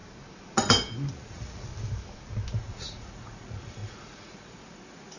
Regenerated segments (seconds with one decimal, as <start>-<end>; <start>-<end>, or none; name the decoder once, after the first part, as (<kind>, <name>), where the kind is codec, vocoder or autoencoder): 1.1-1.7 (vocoder, Vocos); 2.5-5.2